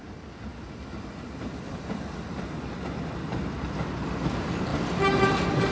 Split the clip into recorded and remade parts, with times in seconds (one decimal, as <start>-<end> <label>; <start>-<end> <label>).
0.0-0.5 recorded; 0.5-3.9 remade; 3.9-5.7 recorded